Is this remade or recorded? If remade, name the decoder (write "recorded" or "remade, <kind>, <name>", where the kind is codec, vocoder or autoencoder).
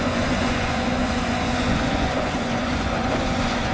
remade, vocoder, Vocos